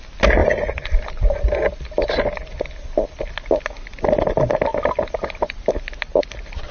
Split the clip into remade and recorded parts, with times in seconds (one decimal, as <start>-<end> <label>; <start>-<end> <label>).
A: 0.0-0.4 recorded; 0.4-3.3 remade; 3.3-4.7 recorded; 4.7-5.7 remade; 5.7-6.7 recorded